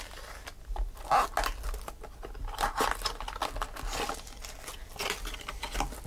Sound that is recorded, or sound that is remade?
recorded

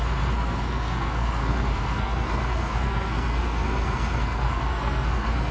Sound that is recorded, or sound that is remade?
remade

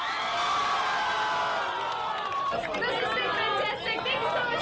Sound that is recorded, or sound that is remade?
recorded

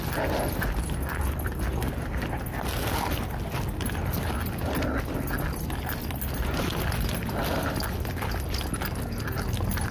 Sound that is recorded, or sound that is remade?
recorded